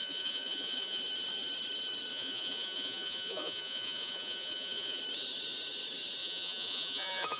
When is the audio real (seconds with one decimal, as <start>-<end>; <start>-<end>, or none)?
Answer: 1.0-2.1; 5.0-6.2